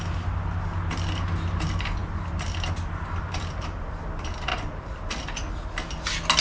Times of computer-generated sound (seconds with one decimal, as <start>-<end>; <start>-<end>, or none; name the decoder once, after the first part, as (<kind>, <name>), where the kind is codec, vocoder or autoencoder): 4.5-5.1 (vocoder, BigVGAN v2)